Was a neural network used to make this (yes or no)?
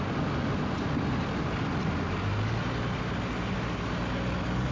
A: no